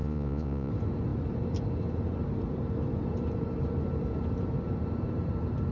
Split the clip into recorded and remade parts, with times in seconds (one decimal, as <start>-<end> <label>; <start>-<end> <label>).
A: 0.0-0.7 remade; 0.7-5.7 recorded